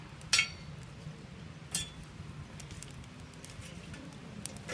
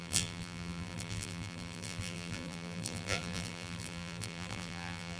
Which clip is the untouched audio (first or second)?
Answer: first